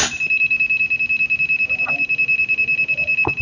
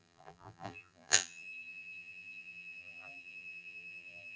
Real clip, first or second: first